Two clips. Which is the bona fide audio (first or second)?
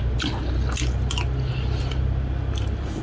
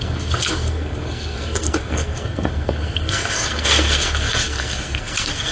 first